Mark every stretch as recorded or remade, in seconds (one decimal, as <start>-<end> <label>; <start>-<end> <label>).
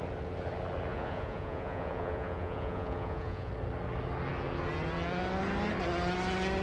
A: 0.0-0.9 recorded; 0.9-3.5 remade; 3.5-6.6 recorded